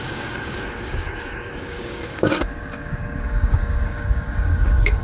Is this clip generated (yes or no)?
yes